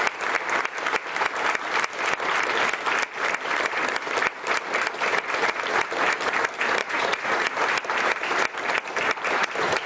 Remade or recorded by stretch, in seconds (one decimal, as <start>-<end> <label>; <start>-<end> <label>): 0.0-6.8 recorded; 6.8-7.5 remade; 7.5-9.9 recorded